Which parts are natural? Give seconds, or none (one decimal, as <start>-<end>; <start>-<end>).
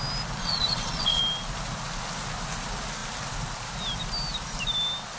0.0-0.4; 1.2-5.2